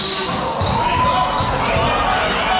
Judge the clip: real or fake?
real